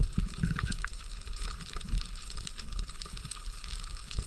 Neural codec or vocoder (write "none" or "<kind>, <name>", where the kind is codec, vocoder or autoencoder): codec, HILCodec